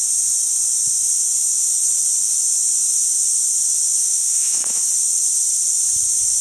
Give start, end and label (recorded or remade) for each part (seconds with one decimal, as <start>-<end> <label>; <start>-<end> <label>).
0.0-4.0 recorded; 4.0-4.8 remade; 4.8-6.4 recorded